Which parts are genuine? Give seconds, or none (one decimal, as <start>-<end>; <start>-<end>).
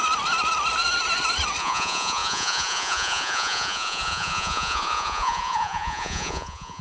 0.0-1.6